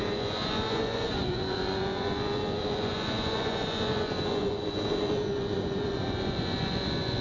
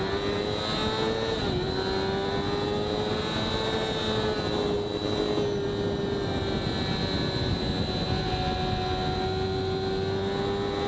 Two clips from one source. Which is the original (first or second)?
second